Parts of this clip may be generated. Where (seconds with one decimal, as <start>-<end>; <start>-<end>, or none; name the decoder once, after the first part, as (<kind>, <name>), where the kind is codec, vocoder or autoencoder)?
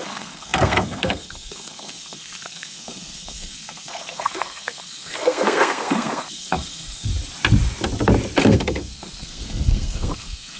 0.0-7.1 (codec, SNAC); 8.4-10.6